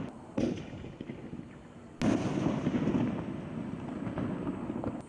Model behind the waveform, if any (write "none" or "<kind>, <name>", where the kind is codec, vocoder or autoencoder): none